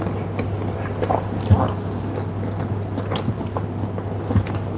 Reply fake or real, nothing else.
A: real